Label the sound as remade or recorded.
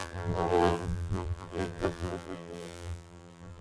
remade